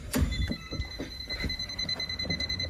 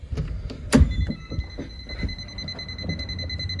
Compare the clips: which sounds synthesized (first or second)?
first